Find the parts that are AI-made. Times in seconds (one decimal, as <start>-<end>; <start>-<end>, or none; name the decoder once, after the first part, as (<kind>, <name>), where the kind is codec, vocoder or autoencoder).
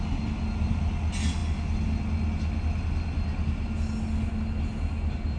none